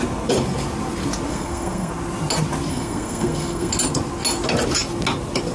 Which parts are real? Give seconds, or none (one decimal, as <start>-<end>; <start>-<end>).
0.0-1.3; 1.9-2.7; 3.7-5.5